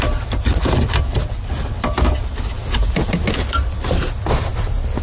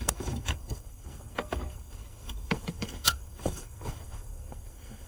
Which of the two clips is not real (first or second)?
second